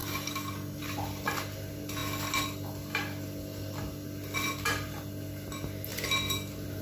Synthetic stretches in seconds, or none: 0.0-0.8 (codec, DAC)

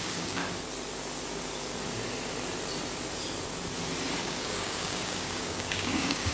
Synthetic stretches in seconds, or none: 0.0-0.4 (codec, DAC); 4.2-6.3

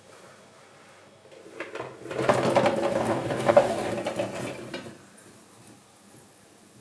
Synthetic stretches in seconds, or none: 2.9-3.9 (codec, DAC)

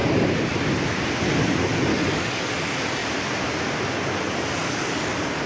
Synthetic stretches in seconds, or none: 1.9-2.5 (codec, DAC); 4.6-5.1

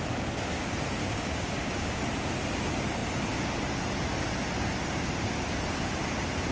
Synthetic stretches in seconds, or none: 1.0-2.0 (codec, DAC)

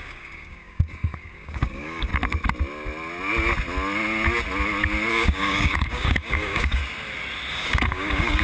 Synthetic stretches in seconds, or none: 0.0-2.1 (codec, DAC); 5.1-6.8; 7.5-8.4